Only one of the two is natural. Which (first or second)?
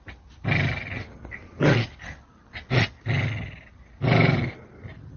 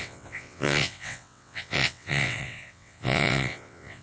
first